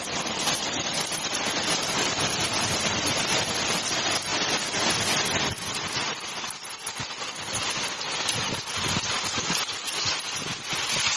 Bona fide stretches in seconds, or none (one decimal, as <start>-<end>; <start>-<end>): 4.3-5.4